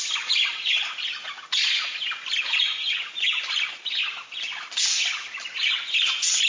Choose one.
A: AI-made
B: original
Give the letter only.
B